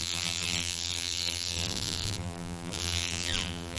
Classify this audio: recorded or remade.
remade